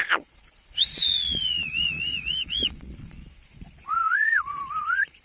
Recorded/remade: remade